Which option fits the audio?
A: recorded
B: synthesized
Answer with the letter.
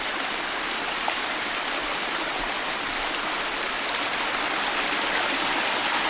A